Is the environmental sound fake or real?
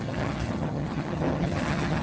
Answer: fake